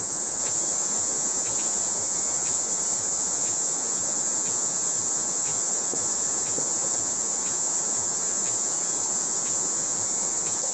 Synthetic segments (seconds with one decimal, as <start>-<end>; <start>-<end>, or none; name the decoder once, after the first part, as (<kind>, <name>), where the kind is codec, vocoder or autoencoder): 0.0-10.7 (vocoder, Vocos)